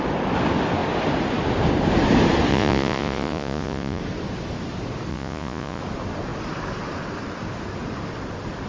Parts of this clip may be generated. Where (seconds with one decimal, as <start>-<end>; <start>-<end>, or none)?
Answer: 2.5-4.0; 5.1-5.8